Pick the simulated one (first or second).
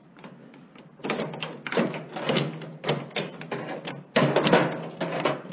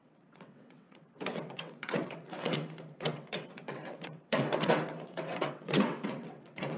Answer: second